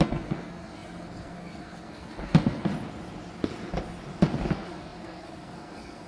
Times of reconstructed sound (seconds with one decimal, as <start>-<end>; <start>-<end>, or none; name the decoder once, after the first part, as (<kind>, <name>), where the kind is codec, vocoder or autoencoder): 0.0-2.7 (codec, SNAC); 4.5-6.1